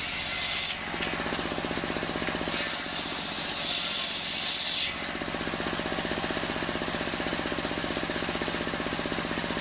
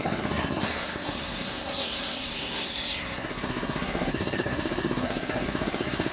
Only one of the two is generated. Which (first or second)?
second